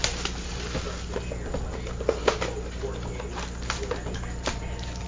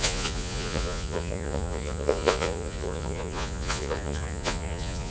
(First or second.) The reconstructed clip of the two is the second